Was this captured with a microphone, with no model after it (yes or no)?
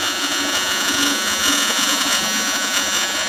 no